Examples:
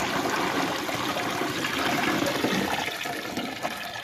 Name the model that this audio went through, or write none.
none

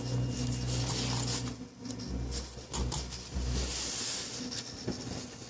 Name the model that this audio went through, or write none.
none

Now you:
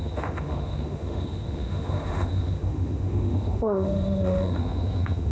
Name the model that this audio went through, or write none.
autoencoder, DAC-VAE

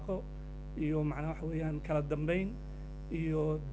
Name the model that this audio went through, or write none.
none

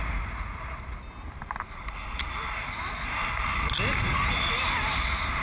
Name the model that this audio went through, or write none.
none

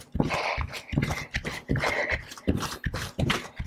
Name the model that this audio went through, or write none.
none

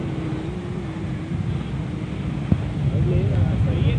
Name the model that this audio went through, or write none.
none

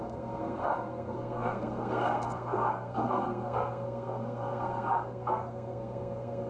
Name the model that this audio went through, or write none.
codec, SNAC